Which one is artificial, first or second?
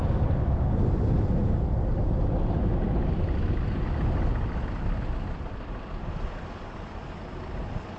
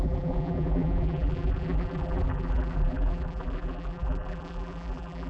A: second